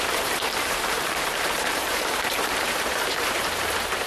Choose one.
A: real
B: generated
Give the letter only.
B